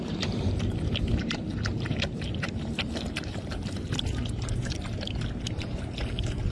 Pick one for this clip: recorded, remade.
remade